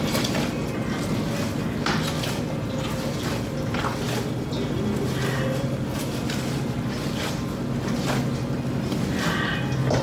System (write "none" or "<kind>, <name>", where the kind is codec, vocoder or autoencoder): none